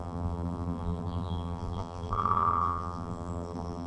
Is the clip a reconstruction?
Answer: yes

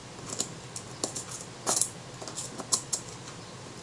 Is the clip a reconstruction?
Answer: no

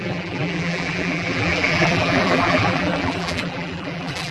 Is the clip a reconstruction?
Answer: yes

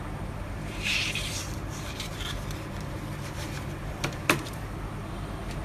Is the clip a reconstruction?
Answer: yes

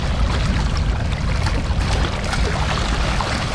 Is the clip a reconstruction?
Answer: no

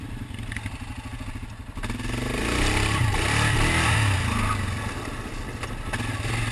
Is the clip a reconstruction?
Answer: no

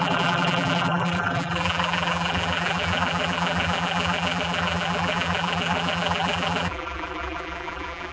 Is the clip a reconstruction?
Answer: yes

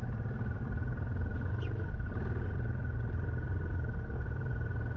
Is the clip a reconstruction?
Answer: yes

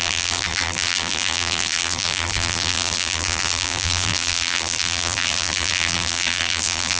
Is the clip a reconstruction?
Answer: yes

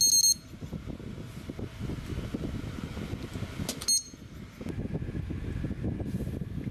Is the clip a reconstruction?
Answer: no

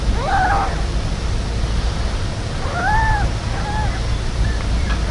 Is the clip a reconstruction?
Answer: yes